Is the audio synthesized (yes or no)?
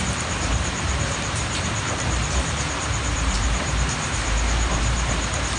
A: yes